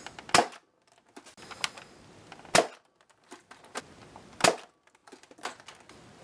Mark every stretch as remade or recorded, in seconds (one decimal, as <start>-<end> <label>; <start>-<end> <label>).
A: 0.0-6.2 recorded